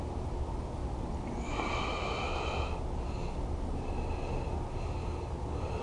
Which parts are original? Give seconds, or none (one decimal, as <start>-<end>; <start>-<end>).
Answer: 0.0-5.8